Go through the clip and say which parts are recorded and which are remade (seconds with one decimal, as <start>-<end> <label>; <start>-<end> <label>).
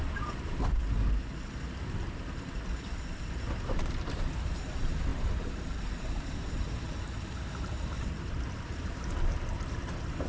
0.0-0.8 remade; 0.8-1.8 recorded; 1.8-10.3 remade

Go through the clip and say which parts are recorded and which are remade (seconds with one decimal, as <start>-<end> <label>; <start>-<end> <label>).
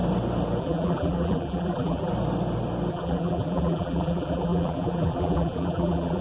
0.0-0.6 recorded; 0.6-2.1 remade; 2.1-2.9 recorded; 2.9-6.2 remade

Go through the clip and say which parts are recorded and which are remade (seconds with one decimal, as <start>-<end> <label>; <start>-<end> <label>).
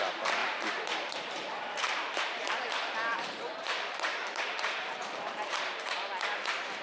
0.0-0.4 recorded; 0.4-2.4 remade; 2.4-3.1 recorded; 3.1-5.9 remade; 5.9-6.8 recorded